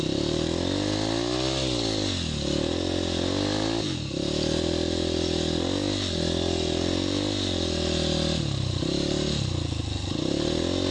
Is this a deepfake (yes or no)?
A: no